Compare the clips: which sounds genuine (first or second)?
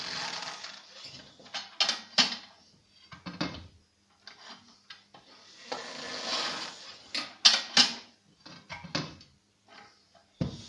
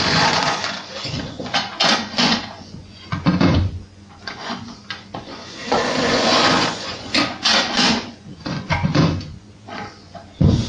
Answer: first